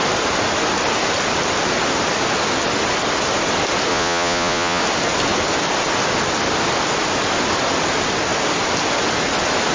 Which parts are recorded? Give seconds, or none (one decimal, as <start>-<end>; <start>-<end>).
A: 0.0-3.9; 4.8-9.7

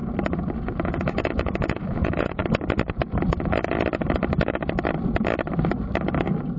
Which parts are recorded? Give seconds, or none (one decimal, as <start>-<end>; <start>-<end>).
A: 0.0-0.6; 2.4-6.6